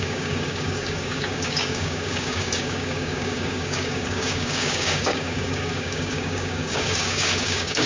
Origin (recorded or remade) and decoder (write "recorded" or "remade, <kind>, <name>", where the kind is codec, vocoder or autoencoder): remade, codec, DAC